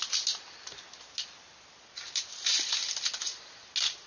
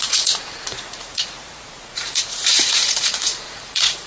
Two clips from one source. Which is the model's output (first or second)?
second